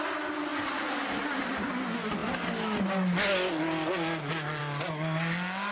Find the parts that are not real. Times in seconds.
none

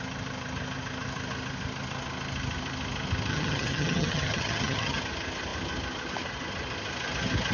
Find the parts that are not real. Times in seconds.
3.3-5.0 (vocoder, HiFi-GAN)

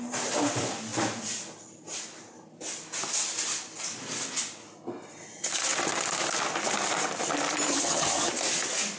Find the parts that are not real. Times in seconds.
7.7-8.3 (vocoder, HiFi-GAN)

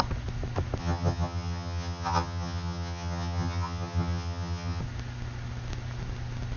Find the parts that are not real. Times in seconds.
0.8-4.8 (vocoder, HiFi-GAN)